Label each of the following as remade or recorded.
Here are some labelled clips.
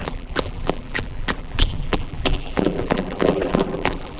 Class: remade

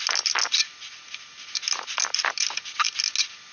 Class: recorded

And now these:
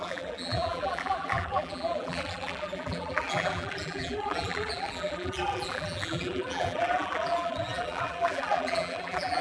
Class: remade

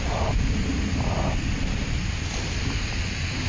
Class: recorded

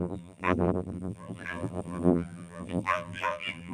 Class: remade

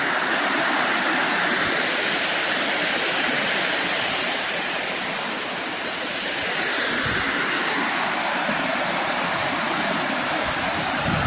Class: recorded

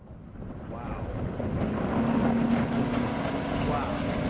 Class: recorded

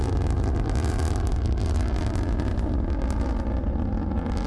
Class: recorded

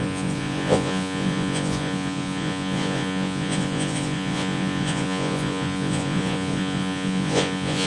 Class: remade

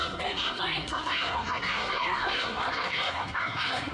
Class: remade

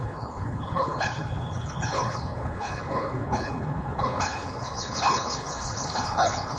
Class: remade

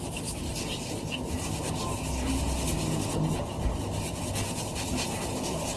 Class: recorded